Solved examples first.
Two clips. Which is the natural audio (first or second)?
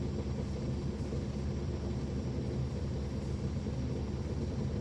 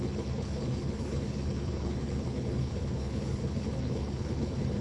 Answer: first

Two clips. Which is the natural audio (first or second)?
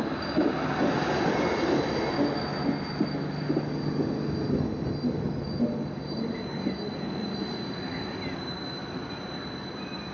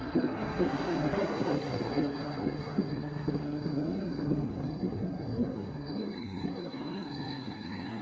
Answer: first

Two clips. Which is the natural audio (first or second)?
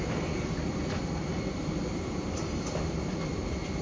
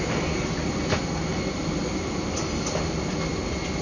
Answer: second